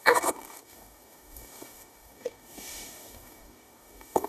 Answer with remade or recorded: remade